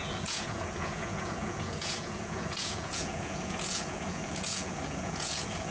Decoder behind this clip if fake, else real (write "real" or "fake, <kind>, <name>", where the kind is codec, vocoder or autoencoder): fake, vocoder, Vocos